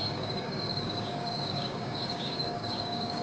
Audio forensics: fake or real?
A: fake